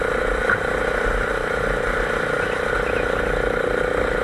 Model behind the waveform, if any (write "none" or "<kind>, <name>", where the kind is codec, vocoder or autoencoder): vocoder, BigVGAN v2